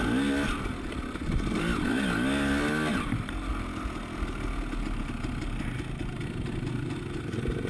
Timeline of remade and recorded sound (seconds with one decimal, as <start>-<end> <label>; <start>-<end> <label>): 0.0-7.7 recorded